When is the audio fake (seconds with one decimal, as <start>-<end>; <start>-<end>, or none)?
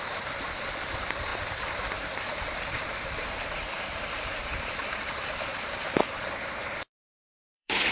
0.0-5.5; 6.6-7.9